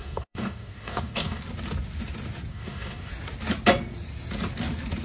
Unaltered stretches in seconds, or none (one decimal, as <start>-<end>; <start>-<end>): 1.4-2.5; 3.1-5.0